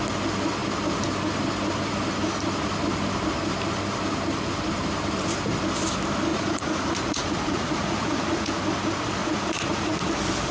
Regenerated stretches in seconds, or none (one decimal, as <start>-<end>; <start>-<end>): 6.3-8.5; 9.2-10.1